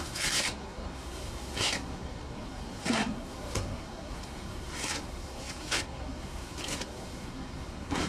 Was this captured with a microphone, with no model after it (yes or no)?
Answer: no